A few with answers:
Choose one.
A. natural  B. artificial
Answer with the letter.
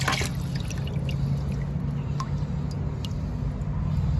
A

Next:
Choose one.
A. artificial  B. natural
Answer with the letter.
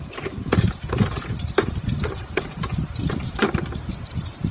A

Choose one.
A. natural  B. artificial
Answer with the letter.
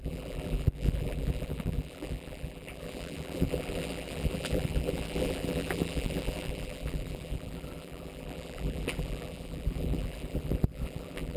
B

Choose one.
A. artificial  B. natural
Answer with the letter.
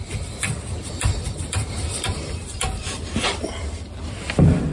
A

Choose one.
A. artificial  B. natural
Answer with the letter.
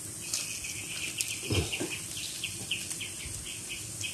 B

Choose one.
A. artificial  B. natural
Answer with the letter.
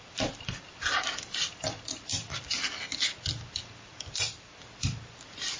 B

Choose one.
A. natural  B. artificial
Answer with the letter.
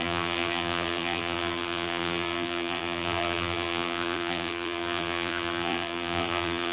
B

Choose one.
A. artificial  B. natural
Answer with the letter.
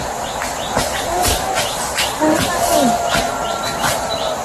B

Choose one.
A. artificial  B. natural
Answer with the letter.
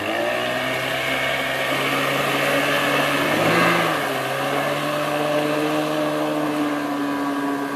B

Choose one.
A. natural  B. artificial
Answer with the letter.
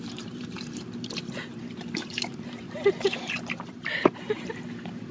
B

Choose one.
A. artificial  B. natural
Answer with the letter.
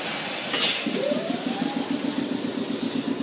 B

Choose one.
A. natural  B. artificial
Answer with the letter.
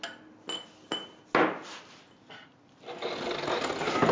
A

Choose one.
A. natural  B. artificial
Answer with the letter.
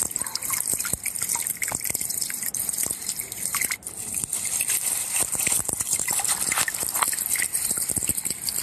B